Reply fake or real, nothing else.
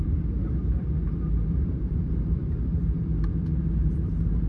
fake